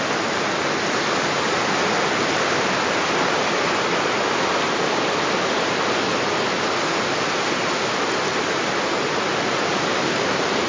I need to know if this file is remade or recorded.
recorded